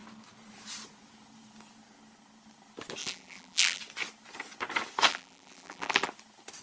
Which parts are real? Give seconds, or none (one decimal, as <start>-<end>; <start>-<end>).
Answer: 0.0-3.0; 3.8-5.1; 6.1-6.6